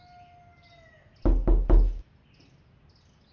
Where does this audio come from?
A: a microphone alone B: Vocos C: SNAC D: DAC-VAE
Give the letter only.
A